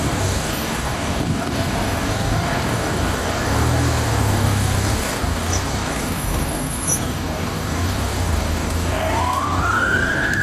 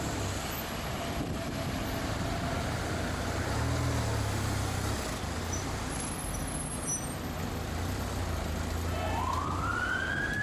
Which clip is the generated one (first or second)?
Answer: first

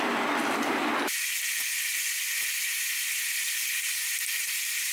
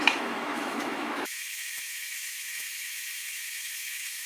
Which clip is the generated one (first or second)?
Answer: second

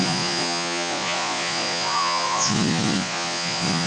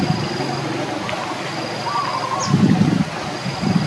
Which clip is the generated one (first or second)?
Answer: first